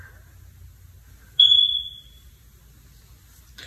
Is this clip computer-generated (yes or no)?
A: no